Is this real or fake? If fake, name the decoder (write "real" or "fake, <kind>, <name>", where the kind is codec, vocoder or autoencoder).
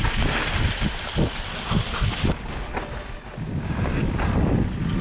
real